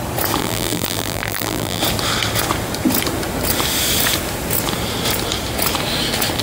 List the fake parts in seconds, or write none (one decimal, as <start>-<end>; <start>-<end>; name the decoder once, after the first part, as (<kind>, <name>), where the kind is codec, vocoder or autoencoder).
0.4-1.8 (vocoder, BigVGAN v2)